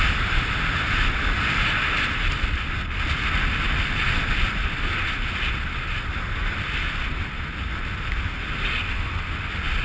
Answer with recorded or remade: recorded